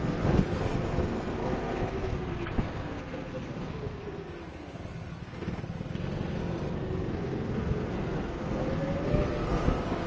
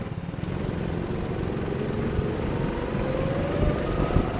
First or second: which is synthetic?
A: first